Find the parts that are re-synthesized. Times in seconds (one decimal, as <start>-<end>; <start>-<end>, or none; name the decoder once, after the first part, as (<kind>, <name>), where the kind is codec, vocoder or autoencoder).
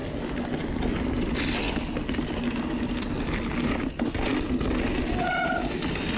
none